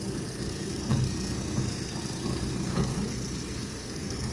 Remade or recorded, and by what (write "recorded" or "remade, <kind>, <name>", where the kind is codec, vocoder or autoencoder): remade, codec, SNAC